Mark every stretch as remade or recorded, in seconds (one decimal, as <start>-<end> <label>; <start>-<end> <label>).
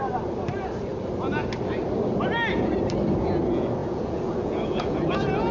0.0-3.8 recorded; 3.8-5.1 remade; 5.1-5.5 recorded